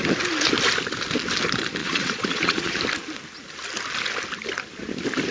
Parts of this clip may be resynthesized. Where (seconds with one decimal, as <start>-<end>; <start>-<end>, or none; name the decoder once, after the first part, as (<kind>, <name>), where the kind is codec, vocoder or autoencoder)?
1.8-2.8 (vocoder, Vocos)